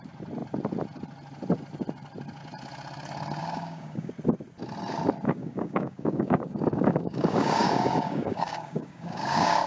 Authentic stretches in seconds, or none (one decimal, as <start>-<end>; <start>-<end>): 0.0-3.4; 4.1-5.4

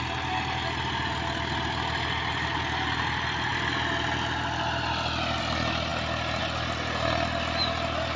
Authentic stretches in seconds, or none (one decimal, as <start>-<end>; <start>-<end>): 0.0-8.2